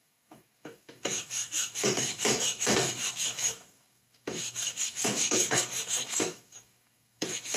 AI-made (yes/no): yes